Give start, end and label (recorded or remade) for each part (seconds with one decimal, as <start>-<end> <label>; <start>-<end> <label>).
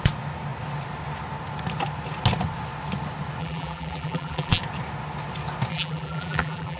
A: 0.0-3.4 recorded; 3.4-4.6 remade; 4.6-5.7 recorded; 5.7-6.8 remade